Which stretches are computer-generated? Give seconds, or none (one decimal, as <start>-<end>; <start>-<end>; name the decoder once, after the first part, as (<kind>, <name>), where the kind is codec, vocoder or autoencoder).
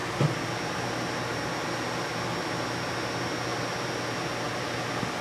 none